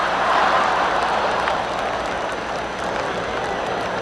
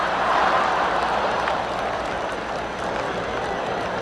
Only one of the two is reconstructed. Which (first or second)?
second